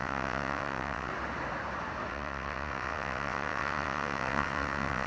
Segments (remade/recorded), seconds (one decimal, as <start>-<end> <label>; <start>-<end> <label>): 0.0-1.1 remade; 1.1-2.1 recorded; 2.1-5.1 remade

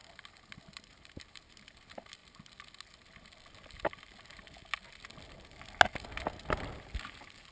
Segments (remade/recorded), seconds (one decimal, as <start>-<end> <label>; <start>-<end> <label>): 0.0-7.5 recorded

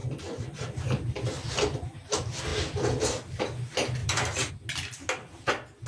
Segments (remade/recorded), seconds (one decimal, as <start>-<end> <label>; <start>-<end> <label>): 0.0-1.1 remade; 1.1-4.0 recorded; 4.0-4.5 remade; 4.5-5.9 recorded

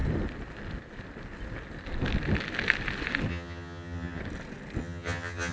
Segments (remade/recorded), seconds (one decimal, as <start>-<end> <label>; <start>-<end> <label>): 0.0-3.3 recorded; 3.3-4.2 remade; 4.2-4.8 recorded; 4.8-5.5 remade

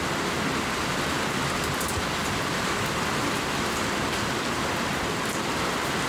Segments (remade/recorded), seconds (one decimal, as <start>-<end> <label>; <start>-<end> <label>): 0.0-6.1 recorded